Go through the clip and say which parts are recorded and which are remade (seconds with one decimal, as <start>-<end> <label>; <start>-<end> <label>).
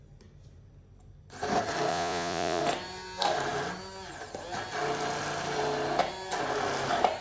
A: 0.0-1.9 recorded; 1.9-2.6 remade; 2.6-7.2 recorded